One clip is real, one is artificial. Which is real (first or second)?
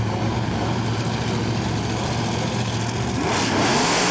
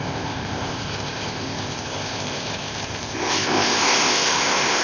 first